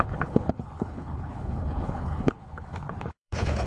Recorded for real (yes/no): no